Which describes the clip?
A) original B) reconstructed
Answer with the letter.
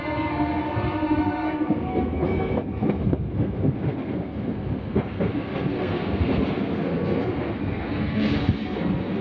B